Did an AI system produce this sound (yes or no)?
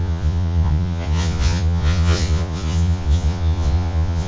yes